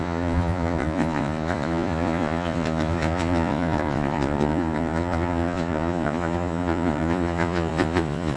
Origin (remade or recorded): remade